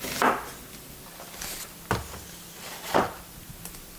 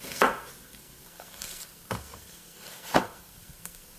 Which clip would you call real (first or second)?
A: first